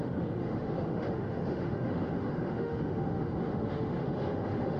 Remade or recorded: remade